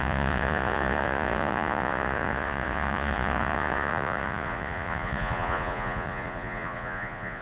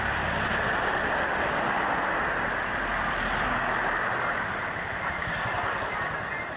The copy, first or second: first